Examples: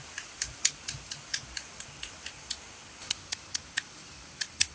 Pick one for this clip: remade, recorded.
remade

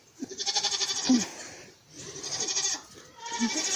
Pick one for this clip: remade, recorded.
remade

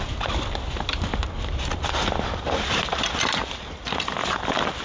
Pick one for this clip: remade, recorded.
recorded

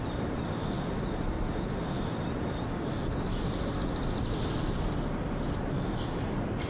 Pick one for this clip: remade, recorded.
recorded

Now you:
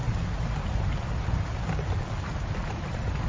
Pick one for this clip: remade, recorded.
remade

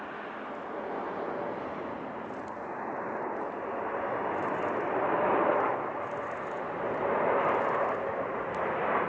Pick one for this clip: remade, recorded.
recorded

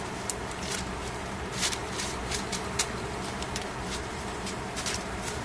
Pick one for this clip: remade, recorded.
remade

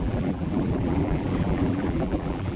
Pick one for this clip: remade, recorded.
remade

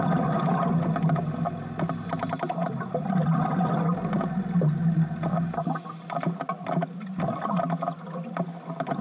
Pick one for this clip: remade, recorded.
recorded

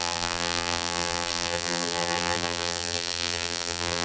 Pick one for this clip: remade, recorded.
remade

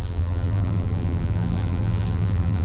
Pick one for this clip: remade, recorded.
remade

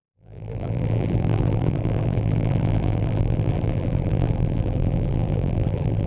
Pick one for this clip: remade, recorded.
remade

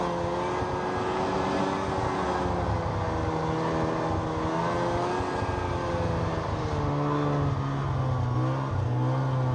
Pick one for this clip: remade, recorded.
recorded